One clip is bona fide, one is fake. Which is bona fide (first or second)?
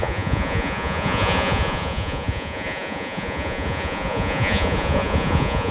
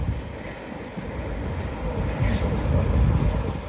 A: second